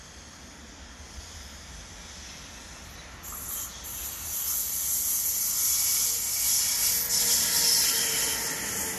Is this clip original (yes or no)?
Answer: yes